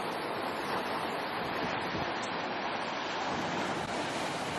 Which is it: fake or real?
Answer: real